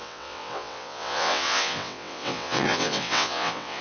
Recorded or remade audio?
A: remade